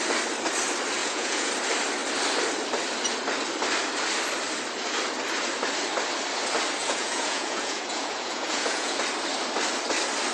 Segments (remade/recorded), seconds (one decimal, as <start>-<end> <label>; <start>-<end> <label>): 0.0-1.0 recorded; 1.0-1.5 remade; 1.5-6.8 recorded; 6.8-9.0 remade; 9.0-10.3 recorded